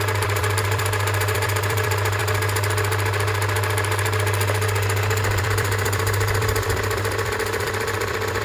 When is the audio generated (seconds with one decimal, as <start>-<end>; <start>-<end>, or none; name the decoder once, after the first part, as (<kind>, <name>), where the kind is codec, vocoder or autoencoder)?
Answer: 0.0-2.2 (vocoder, BigVGAN v2); 5.4-8.4